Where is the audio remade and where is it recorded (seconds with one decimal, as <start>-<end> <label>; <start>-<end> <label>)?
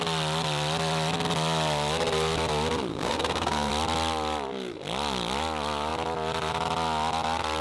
0.0-2.9 recorded; 2.9-3.7 remade; 3.7-7.6 recorded